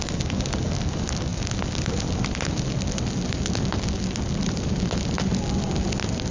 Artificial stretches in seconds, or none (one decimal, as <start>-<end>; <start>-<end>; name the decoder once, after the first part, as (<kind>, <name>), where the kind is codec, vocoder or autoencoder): none